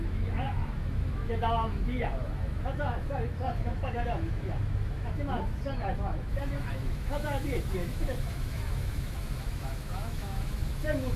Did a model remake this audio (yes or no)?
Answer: yes